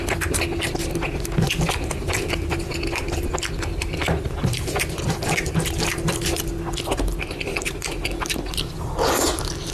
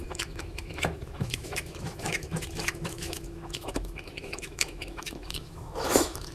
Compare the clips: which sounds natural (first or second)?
first